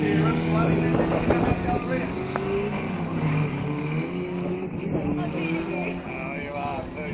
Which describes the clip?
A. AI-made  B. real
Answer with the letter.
B